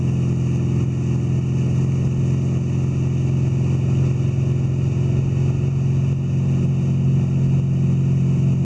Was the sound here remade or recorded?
recorded